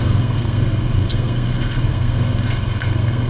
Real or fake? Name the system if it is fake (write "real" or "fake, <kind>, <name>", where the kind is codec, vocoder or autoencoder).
fake, codec, SNAC